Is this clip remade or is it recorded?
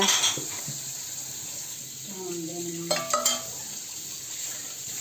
recorded